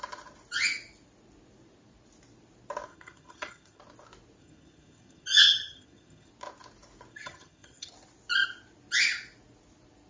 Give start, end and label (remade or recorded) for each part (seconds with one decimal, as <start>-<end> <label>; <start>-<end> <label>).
0.0-2.9 recorded; 2.9-3.8 remade; 3.8-4.4 recorded; 4.4-6.3 remade; 6.3-7.1 recorded; 7.1-7.9 remade; 7.9-10.1 recorded